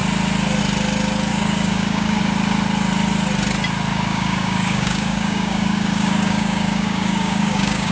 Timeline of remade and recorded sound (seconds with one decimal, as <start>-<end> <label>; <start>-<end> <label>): 0.0-1.3 recorded; 1.3-2.2 remade; 2.2-3.9 recorded; 3.9-7.9 remade

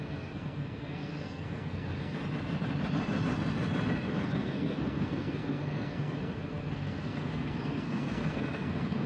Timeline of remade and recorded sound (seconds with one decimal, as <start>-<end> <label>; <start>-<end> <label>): 0.0-2.2 remade; 2.2-4.1 recorded; 4.1-9.1 remade

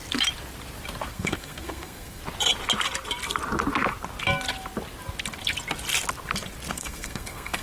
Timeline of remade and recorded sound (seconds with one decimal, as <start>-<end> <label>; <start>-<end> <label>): 0.0-1.1 recorded; 1.1-2.2 remade; 2.2-6.7 recorded; 6.7-7.6 remade

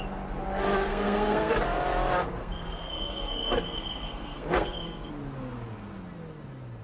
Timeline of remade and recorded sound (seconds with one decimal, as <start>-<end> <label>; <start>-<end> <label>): 0.0-0.9 recorded; 0.9-1.5 remade; 1.5-2.4 recorded; 2.4-5.1 remade; 5.1-6.8 recorded

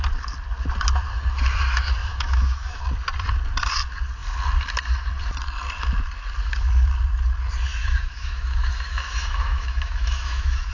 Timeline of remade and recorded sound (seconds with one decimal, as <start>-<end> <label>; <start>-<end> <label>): 0.0-2.0 recorded; 2.0-2.8 remade; 2.8-7.7 recorded; 7.7-10.7 remade